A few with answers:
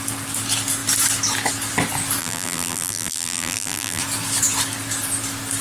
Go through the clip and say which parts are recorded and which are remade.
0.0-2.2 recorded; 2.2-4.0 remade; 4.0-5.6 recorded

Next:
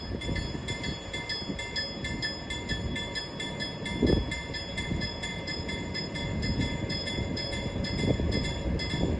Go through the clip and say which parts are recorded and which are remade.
0.0-4.7 recorded; 4.7-8.5 remade; 8.5-9.2 recorded

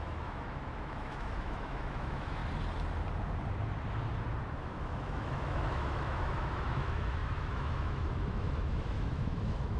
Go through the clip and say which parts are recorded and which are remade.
0.0-2.4 remade; 2.4-4.6 recorded; 4.6-9.8 remade

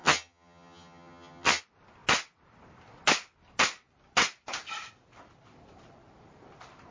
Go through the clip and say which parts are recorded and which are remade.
0.0-1.6 remade; 1.6-6.9 recorded

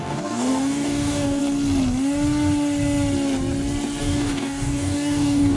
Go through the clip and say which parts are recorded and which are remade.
0.0-1.4 remade; 1.4-4.0 recorded; 4.0-5.6 remade

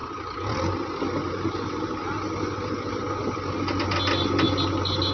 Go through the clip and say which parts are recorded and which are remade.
0.0-5.1 recorded